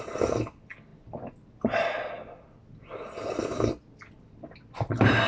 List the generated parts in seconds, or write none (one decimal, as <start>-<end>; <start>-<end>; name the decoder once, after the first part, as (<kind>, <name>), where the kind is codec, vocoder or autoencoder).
none